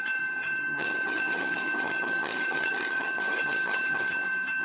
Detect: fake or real fake